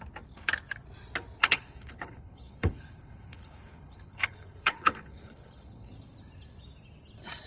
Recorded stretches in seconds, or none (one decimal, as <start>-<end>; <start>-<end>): 0.0-1.4; 5.9-7.5